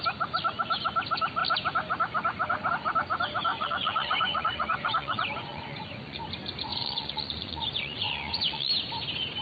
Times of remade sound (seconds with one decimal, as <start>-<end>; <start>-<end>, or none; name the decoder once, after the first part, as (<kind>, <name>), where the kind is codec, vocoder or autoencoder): 3.5-6.2 (vocoder, Vocos); 6.7-8.7